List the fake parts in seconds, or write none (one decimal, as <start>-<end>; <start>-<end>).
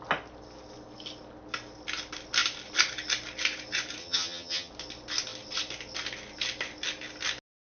4.0-4.7